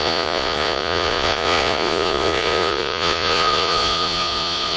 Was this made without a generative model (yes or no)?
no